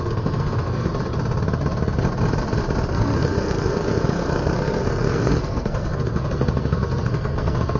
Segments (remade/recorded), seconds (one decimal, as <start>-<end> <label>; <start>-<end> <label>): 0.0-0.9 remade; 0.9-2.9 recorded; 2.9-7.8 remade